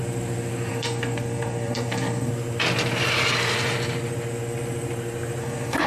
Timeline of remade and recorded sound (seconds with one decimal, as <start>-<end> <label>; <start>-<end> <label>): 0.0-0.7 recorded; 0.7-2.3 remade; 2.3-5.4 recorded; 5.4-5.9 remade